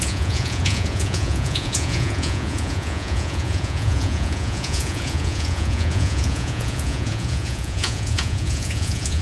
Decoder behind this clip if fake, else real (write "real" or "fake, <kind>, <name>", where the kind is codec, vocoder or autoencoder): fake, vocoder, Vocos